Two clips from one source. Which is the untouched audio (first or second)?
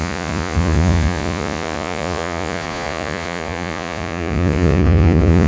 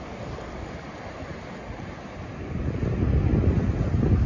second